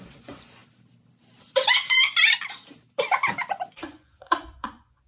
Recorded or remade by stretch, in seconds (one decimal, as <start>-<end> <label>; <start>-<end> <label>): 0.0-0.6 remade; 0.6-3.7 recorded; 3.7-5.1 remade

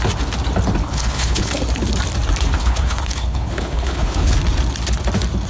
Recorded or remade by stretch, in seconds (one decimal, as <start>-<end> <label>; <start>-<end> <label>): 0.0-0.8 recorded; 0.8-1.5 remade; 1.5-2.6 recorded; 2.6-4.3 remade; 4.3-5.5 recorded

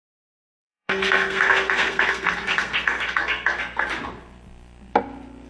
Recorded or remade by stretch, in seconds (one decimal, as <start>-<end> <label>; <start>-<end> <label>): 0.0-0.6 recorded; 0.6-3.9 remade; 3.9-5.5 recorded